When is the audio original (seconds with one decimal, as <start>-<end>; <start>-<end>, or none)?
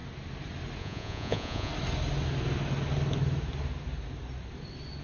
0.0-0.8; 1.7-5.0